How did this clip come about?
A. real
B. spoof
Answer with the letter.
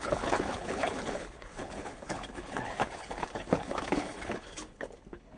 B